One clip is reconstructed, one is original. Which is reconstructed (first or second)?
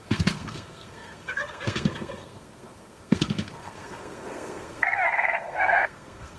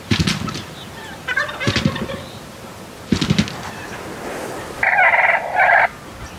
first